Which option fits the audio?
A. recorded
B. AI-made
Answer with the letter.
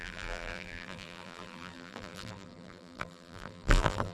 B